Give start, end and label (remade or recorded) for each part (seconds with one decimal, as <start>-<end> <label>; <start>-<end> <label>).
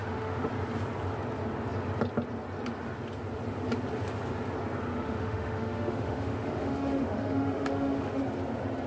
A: 0.0-0.5 remade; 0.5-4.9 recorded; 4.9-8.2 remade; 8.2-8.9 recorded